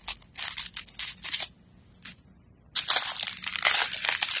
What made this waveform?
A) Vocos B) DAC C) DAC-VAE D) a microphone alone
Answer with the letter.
D